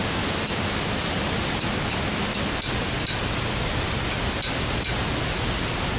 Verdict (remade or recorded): recorded